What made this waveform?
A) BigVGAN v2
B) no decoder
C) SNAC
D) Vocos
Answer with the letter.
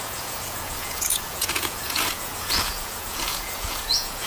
D